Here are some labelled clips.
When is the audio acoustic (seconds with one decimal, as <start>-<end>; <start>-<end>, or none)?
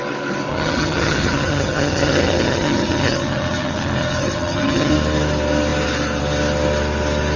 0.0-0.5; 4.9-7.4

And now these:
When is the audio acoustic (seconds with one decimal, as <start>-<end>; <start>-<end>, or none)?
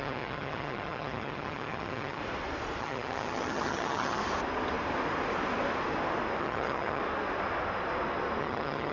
2.2-2.8; 4.2-6.4; 7.0-8.4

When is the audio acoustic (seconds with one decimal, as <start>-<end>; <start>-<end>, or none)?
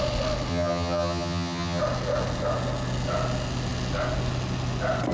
0.0-0.5; 1.8-5.1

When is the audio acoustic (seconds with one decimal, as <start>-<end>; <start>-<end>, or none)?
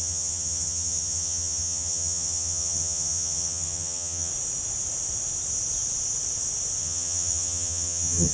4.3-6.8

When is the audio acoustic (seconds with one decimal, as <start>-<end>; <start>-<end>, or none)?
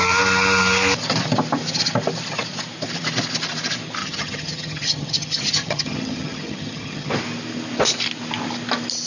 0.0-4.0; 7.1-9.1